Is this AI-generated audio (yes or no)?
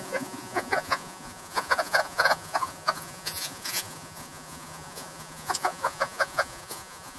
yes